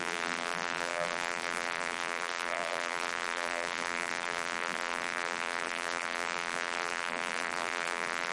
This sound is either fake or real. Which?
fake